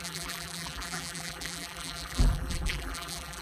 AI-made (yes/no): yes